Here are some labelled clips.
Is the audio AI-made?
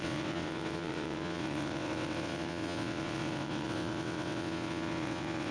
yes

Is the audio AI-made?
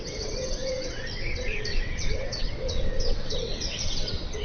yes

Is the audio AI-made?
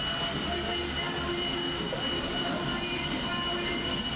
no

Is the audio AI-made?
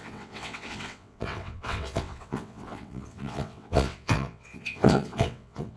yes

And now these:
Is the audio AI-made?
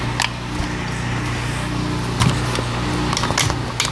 no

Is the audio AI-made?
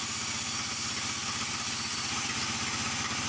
no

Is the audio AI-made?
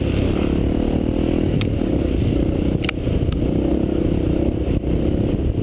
no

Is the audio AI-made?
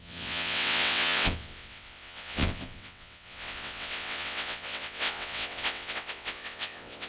yes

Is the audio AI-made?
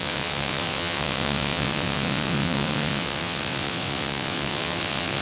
yes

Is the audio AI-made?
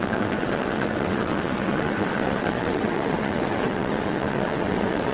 yes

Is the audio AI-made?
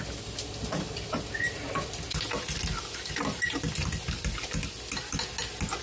no